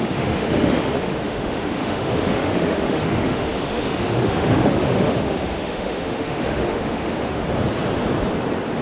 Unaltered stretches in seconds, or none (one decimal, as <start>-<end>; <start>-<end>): 7.4-8.8